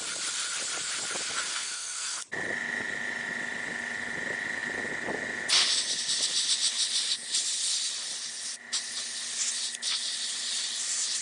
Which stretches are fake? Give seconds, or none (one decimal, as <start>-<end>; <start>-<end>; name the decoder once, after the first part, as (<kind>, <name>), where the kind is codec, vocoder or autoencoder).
1.5-2.2 (codec, SNAC)